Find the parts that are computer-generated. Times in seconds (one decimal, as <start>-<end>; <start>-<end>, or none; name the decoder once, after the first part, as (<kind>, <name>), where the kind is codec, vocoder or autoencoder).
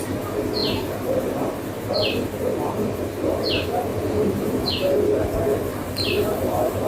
3.9-4.7 (vocoder, BigVGAN v2); 5.7-6.4